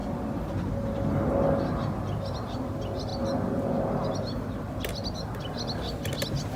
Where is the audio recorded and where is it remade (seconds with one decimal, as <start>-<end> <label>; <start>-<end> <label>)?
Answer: 0.0-6.6 recorded